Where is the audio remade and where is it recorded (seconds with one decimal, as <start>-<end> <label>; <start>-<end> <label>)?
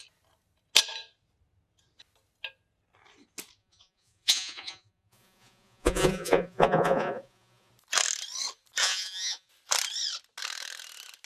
0.0-3.6 recorded; 3.6-7.7 remade; 7.7-8.8 recorded; 8.8-9.5 remade; 9.5-11.3 recorded